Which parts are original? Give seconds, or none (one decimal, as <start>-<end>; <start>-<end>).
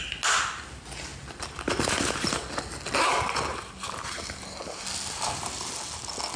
0.0-6.4